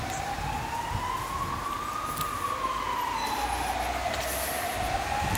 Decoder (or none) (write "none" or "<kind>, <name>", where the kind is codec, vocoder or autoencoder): none